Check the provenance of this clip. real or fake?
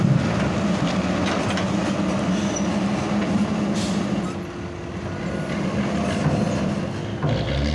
real